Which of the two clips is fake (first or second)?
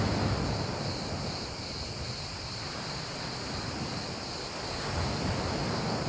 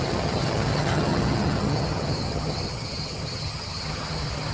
second